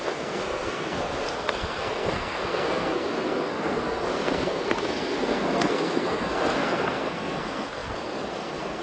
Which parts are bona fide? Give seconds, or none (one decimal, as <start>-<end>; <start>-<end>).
none